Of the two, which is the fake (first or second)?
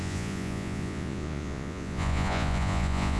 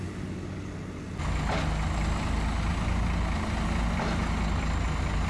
first